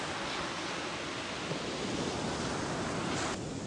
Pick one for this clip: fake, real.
real